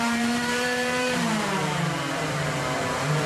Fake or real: fake